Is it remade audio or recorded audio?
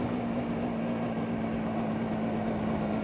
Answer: recorded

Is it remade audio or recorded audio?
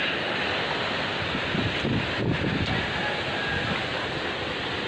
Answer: recorded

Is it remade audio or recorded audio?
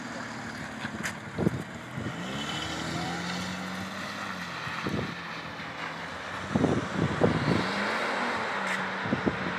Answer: recorded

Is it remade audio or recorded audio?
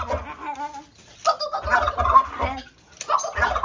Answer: recorded